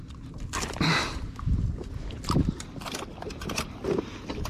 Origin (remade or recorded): recorded